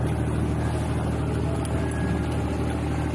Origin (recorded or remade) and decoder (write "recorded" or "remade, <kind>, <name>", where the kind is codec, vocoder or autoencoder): recorded